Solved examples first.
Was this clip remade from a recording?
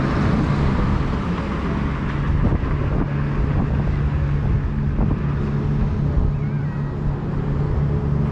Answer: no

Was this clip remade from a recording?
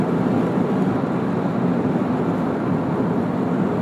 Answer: no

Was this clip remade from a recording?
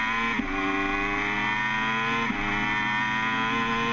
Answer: no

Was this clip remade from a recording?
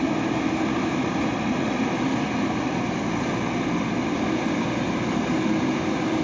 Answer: no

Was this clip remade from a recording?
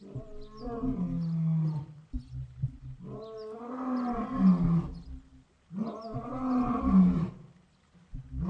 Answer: no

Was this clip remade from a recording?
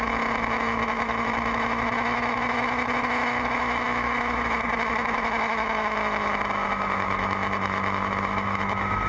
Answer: yes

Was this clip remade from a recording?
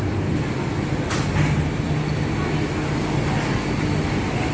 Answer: no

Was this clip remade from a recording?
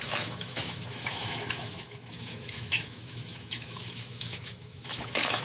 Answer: yes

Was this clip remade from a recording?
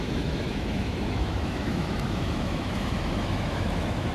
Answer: yes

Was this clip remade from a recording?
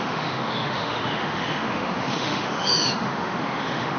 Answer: yes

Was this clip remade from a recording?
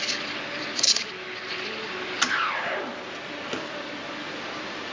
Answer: no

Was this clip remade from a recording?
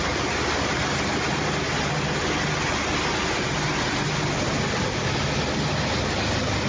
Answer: no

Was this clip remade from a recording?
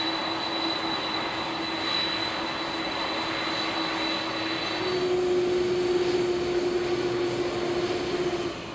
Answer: no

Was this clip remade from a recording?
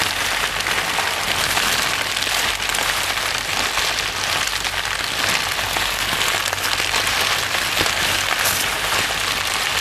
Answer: no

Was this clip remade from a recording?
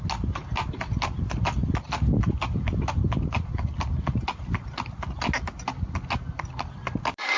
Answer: no